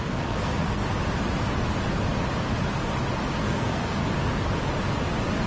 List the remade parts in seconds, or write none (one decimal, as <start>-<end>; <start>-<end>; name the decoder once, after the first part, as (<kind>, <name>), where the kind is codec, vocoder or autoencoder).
0.0-0.8 (codec, SNAC); 3.4-4.0